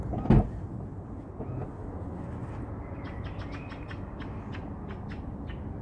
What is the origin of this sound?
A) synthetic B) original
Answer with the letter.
B